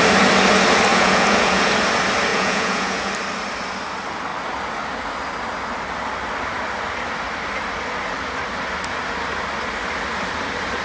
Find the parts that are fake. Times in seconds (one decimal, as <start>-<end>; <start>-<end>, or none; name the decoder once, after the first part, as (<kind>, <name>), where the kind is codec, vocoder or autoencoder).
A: 0.9-1.7 (vocoder, Vocos); 2.3-3.1